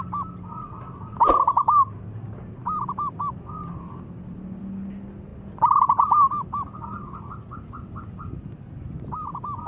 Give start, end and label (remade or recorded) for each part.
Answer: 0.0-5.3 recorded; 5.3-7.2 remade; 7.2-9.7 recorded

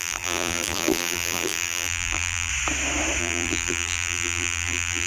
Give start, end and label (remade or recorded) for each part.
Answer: 0.0-2.5 remade; 2.5-3.2 recorded; 3.2-5.1 remade

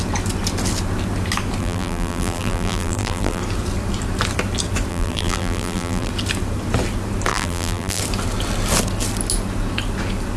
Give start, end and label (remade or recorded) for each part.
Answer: 0.0-1.6 recorded; 1.6-3.4 remade; 3.4-4.9 recorded; 4.9-6.1 remade; 6.1-7.3 recorded; 7.3-8.0 remade; 8.0-10.4 recorded

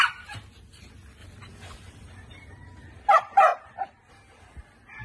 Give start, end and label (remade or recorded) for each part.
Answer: 0.0-1.2 recorded; 1.2-3.1 remade; 3.1-3.5 recorded; 3.5-4.1 remade; 4.1-5.0 recorded